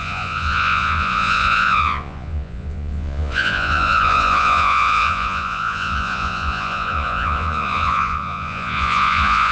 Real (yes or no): no